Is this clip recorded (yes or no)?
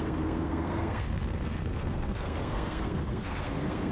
no